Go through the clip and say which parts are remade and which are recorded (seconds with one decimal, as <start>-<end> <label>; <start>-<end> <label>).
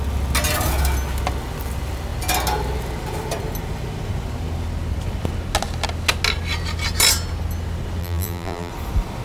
0.0-8.0 recorded; 8.0-8.7 remade; 8.7-9.2 recorded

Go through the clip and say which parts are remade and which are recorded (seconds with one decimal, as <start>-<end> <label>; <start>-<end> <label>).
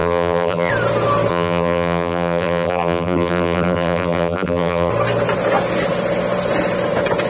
0.0-0.7 remade; 0.7-1.3 recorded; 1.3-4.9 remade; 4.9-7.3 recorded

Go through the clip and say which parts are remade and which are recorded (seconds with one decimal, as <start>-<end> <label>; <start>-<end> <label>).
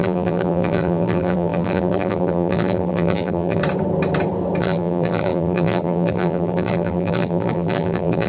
0.0-3.6 remade; 3.6-4.6 recorded; 4.6-8.3 remade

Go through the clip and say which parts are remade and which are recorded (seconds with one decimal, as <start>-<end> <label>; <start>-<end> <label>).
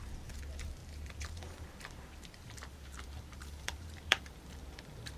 0.0-5.2 remade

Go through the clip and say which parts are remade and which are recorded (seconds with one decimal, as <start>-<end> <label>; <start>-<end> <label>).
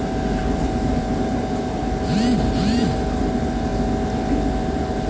0.0-3.7 remade; 3.7-4.5 recorded; 4.5-5.1 remade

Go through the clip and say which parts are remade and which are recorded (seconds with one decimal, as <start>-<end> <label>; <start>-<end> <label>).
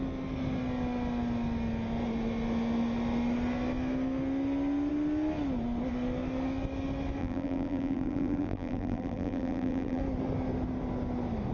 0.0-7.2 recorded; 7.2-10.0 remade; 10.0-11.5 recorded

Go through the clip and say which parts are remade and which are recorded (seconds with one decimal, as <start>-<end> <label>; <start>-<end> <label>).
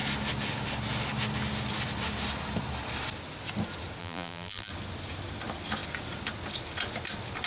0.0-4.0 recorded; 4.0-4.7 remade; 4.7-7.5 recorded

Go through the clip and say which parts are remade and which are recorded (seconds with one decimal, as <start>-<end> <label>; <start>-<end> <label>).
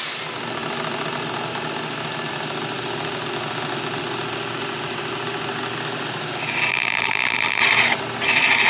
0.0-6.7 recorded; 6.7-7.6 remade; 7.6-8.7 recorded